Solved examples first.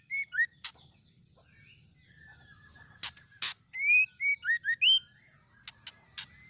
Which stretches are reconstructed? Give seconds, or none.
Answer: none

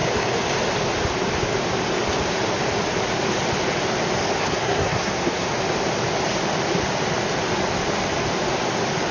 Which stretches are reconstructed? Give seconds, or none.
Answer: 4.4-5.5 (codec, SNAC)

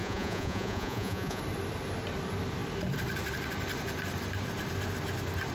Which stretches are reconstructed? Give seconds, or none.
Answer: 0.0-1.4 (vocoder, Vocos)

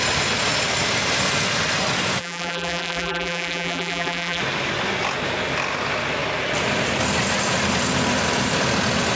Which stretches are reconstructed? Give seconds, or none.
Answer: 2.2-4.4 (vocoder, BigVGAN v2)

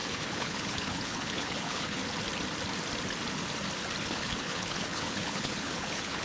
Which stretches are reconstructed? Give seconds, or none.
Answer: 0.0-2.0 (codec, HILCodec); 4.0-6.2